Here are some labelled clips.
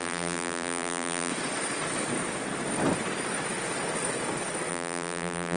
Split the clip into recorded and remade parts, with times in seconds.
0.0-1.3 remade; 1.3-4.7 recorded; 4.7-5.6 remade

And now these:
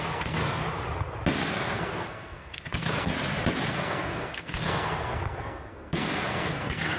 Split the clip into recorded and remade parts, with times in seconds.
0.0-0.6 remade; 0.6-1.5 recorded; 1.5-3.1 remade; 3.1-3.7 recorded; 3.7-7.0 remade

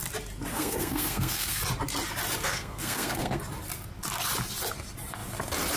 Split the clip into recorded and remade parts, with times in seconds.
0.0-0.5 recorded; 0.5-1.6 remade; 1.6-2.5 recorded; 2.5-3.4 remade; 3.4-5.8 recorded